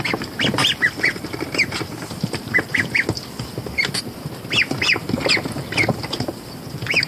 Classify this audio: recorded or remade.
recorded